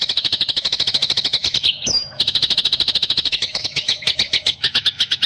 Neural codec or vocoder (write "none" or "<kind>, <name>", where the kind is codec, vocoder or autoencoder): autoencoder, DAC-VAE